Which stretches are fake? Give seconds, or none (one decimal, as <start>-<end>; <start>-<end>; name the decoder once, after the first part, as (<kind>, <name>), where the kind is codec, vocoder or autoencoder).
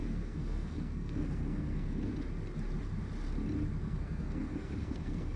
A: 0.0-2.1 (codec, SNAC); 3.8-5.4